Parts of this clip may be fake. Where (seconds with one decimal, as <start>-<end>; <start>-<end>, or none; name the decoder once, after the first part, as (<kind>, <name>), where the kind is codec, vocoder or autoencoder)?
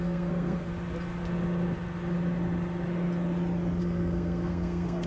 0.0-0.7 (codec, SNAC); 3.8-5.1